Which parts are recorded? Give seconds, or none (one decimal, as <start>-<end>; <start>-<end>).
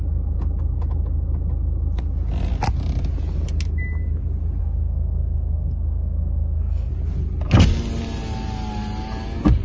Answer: 0.0-4.6; 6.9-9.6